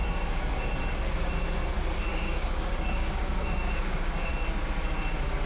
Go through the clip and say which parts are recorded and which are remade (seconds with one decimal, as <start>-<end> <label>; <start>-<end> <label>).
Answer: 0.0-0.8 remade; 0.8-2.1 recorded; 2.1-4.3 remade; 4.3-5.5 recorded